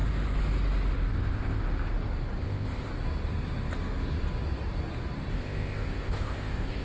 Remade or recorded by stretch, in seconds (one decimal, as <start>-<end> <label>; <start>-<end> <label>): 0.0-1.1 recorded; 1.1-1.6 remade; 1.6-2.4 recorded; 2.4-2.9 remade; 2.9-5.3 recorded; 5.3-6.8 remade